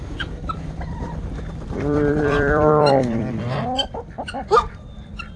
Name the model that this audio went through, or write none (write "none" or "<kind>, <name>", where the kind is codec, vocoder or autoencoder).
vocoder, BigVGAN v2